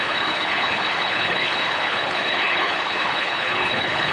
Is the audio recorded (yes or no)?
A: no